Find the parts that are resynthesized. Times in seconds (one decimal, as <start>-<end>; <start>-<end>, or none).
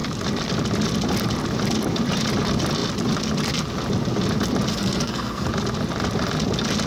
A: 4.7-5.5